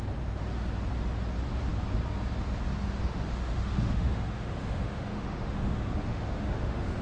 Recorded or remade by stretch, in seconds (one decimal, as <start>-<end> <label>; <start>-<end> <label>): 0.0-3.0 recorded; 3.0-7.0 remade